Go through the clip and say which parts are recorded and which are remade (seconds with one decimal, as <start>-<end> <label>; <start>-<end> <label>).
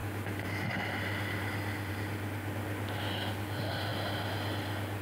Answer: 0.0-5.0 recorded